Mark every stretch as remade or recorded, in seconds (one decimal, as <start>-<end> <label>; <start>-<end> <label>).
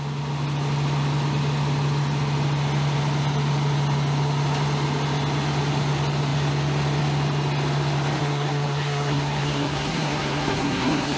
0.0-8.2 recorded; 8.2-11.2 remade